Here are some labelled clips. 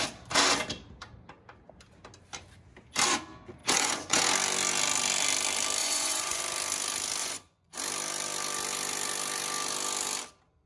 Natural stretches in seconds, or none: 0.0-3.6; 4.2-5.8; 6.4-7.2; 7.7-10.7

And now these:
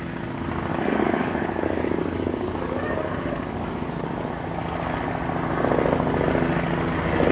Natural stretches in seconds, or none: 0.0-0.7; 4.3-7.3

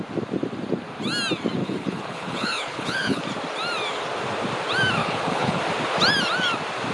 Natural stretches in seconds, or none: 0.0-1.6; 3.2-5.0; 5.6-6.9

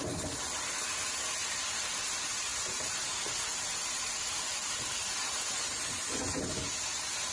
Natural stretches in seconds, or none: 0.0-7.3

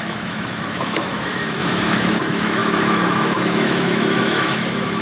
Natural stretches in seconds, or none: none